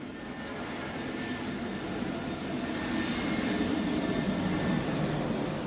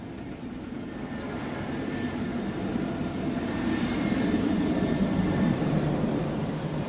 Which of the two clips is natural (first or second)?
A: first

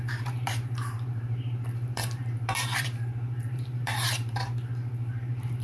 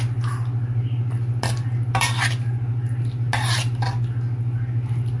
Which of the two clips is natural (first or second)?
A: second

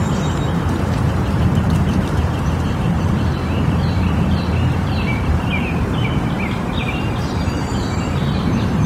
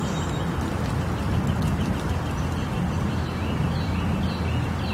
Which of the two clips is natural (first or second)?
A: second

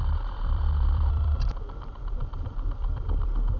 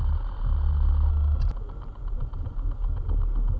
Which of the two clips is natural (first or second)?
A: second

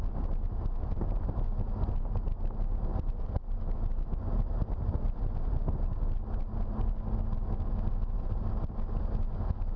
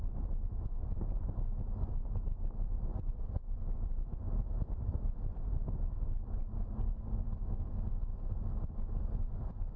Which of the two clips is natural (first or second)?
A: first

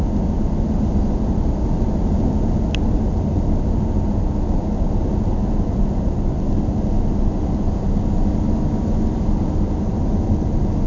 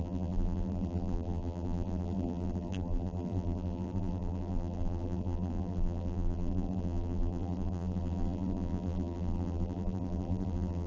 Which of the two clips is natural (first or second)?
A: first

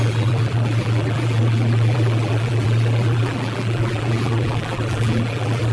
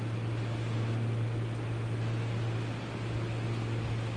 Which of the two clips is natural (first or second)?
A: second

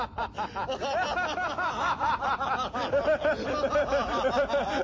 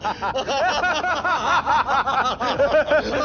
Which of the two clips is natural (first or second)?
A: second